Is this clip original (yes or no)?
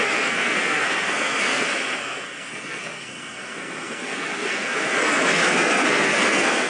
no